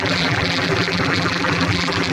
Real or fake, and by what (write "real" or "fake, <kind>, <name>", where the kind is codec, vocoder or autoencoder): fake, vocoder, BigVGAN v2